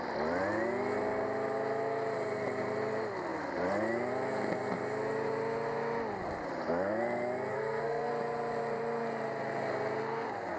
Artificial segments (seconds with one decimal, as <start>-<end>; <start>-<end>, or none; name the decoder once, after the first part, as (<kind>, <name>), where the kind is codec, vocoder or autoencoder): 7.5-8.1 (codec, SNAC)